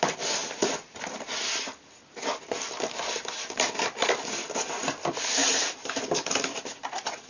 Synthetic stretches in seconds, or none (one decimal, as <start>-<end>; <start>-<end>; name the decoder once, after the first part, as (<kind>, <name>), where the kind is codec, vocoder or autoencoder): 5.4-5.9 (vocoder, BigVGAN v2)

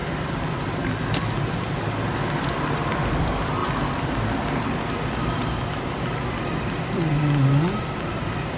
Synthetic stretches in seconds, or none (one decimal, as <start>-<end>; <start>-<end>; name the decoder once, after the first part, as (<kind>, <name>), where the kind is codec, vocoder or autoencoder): 2.4-3.6 (vocoder, BigVGAN v2); 5.3-7.1; 7.8-8.6

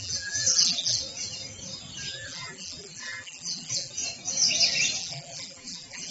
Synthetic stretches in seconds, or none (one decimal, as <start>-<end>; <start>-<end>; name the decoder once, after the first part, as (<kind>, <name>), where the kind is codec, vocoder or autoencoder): 0.0-1.0 (vocoder, BigVGAN v2); 2.1-4.0; 5.0-6.1

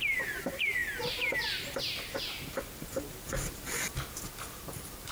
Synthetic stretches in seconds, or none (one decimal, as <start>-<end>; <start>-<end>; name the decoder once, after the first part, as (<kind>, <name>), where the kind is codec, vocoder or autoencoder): 0.0-0.8 (vocoder, BigVGAN v2); 2.5-5.1

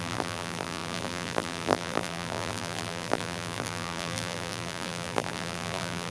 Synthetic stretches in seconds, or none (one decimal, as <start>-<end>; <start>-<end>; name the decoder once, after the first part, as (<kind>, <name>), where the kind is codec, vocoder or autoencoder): 0.0-6.1 (vocoder, BigVGAN v2)

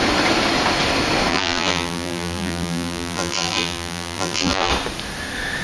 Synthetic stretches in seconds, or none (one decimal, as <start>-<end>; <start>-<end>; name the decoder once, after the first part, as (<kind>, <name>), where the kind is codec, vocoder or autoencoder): 1.3-4.7 (vocoder, BigVGAN v2)

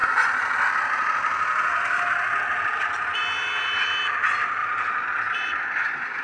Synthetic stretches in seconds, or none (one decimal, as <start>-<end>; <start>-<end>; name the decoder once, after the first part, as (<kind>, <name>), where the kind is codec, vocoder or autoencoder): 4.6-5.1 (vocoder, BigVGAN v2)